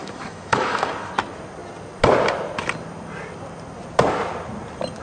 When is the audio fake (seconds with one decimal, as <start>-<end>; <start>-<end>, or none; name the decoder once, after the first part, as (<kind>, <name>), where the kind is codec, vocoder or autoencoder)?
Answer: 0.0-1.1 (autoencoder, DAC-VAE)

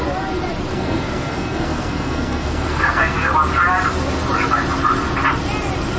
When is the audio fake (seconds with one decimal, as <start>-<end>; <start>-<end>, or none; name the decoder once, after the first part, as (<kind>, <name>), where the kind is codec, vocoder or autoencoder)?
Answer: 0.7-3.3 (codec, SNAC)

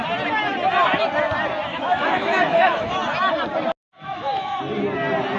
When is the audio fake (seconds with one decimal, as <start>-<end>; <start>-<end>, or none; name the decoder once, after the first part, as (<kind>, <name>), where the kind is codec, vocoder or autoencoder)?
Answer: 1.7-2.9 (autoencoder, DAC-VAE); 3.8-4.6

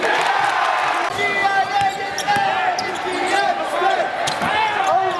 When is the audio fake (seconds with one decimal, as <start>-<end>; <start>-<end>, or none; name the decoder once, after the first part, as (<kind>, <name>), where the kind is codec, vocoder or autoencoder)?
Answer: none

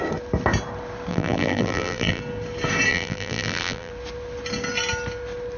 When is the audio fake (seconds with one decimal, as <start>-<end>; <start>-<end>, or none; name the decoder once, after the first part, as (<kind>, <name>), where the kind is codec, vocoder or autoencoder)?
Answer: 1.1-2.2 (vocoder, BigVGAN v2); 2.9-3.9